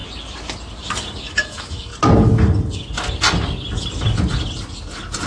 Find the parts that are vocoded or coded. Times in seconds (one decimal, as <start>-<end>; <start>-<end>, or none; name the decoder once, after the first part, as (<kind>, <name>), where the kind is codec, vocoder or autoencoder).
1.2-1.9 (autoencoder, DAC-VAE)